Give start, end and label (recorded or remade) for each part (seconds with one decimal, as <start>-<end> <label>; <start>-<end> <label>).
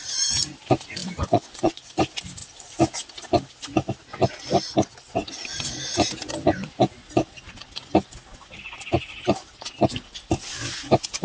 0.0-1.0 recorded; 1.0-1.9 remade; 1.9-11.2 recorded